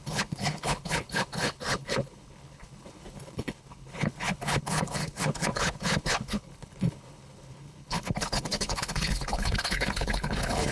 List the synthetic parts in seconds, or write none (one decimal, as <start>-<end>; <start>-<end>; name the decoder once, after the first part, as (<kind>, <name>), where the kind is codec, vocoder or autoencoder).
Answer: 0.0-10.7 (codec, HILCodec)